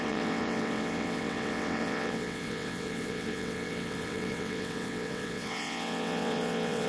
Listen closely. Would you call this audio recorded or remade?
remade